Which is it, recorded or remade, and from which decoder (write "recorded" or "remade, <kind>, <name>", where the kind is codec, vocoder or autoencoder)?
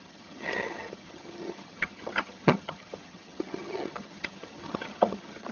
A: remade, vocoder, HiFi-GAN